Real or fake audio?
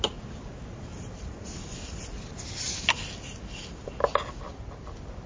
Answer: real